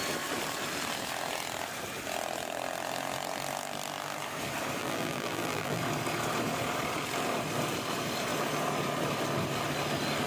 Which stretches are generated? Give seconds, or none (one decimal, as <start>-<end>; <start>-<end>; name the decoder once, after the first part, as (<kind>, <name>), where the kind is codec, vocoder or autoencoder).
4.8-5.8 (vocoder, BigVGAN v2)

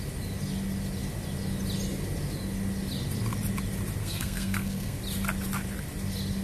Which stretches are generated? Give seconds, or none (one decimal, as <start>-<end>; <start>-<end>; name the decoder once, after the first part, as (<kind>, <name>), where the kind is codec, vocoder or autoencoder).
4.0-5.0 (codec, SNAC)

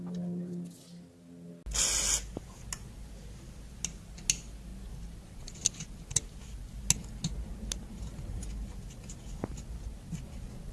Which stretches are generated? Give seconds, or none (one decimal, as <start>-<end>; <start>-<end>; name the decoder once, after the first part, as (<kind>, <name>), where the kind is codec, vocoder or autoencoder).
none

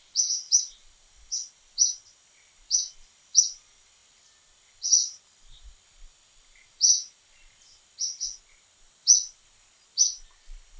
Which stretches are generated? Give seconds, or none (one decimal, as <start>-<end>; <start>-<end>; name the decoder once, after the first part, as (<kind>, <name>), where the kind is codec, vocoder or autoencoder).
none

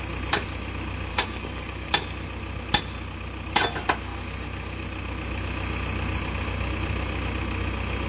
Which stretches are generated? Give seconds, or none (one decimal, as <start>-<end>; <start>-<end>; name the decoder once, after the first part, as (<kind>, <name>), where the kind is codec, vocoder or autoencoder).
1.1-1.9 (codec, DAC)

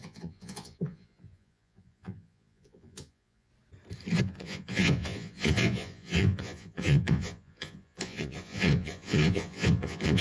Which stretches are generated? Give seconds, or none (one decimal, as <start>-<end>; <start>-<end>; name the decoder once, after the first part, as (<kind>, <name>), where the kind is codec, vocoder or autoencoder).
0.0-3.5 (vocoder, Vocos); 4.2-10.2